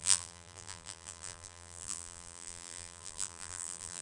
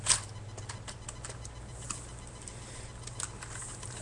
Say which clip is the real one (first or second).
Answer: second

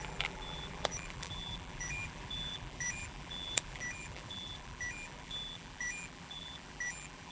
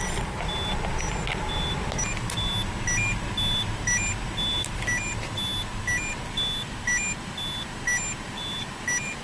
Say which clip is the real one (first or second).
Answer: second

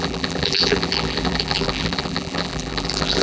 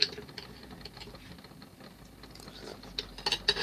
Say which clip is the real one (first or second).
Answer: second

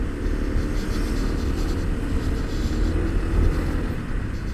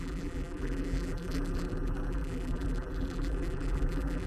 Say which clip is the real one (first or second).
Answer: first